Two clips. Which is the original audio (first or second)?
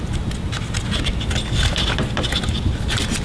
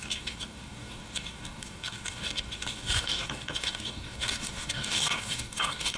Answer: first